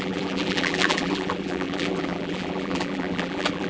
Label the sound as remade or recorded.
remade